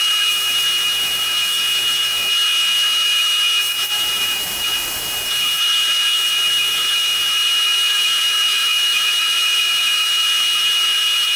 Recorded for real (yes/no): no